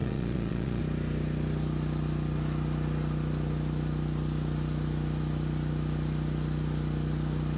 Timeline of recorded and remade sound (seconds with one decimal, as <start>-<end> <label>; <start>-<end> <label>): 0.0-0.8 remade; 0.8-7.6 recorded